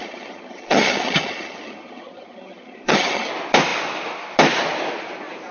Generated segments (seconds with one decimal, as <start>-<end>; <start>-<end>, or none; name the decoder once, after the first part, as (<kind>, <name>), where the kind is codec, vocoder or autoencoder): 0.0-3.3 (vocoder, HiFi-GAN)